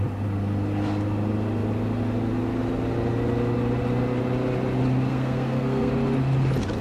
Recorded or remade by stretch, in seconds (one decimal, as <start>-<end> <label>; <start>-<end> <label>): 0.0-5.1 recorded; 5.1-5.9 remade; 5.9-6.8 recorded

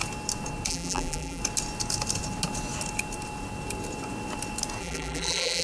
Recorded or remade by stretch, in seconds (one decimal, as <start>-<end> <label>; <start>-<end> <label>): 0.0-0.7 recorded; 0.7-1.4 remade; 1.4-4.8 recorded; 4.8-5.6 remade

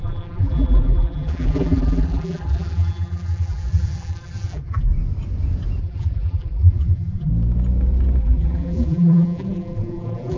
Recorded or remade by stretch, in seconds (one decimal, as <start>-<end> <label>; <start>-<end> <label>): 0.0-4.9 remade; 4.9-5.8 recorded; 5.8-7.3 remade; 7.3-8.2 recorded; 8.2-10.4 remade

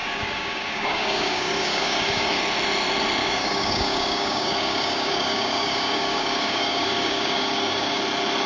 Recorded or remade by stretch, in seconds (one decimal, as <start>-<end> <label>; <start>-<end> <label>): 0.0-2.4 remade; 2.4-3.2 recorded; 3.2-8.0 remade; 8.0-8.5 recorded